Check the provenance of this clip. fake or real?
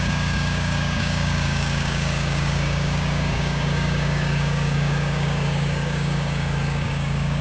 fake